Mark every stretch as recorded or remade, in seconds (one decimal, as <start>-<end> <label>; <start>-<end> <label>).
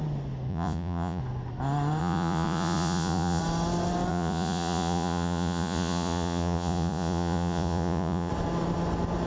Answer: 0.0-0.5 recorded; 0.5-1.2 remade; 1.2-2.0 recorded; 2.0-3.4 remade; 3.4-4.1 recorded; 4.1-8.3 remade; 8.3-9.3 recorded